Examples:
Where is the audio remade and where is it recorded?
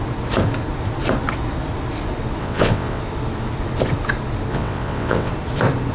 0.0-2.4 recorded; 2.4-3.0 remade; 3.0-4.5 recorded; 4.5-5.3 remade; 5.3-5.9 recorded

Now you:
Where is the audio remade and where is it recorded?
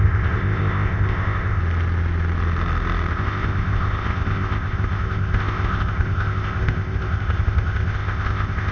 0.0-1.6 remade; 1.6-3.1 recorded; 3.1-8.7 remade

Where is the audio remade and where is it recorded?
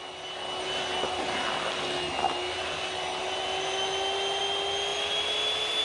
0.0-5.8 recorded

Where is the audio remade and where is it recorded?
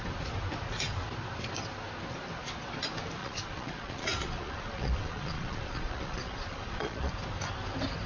0.0-3.2 recorded; 3.2-7.1 remade; 7.1-8.1 recorded